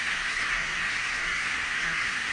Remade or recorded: remade